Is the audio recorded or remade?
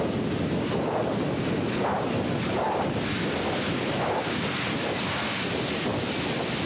recorded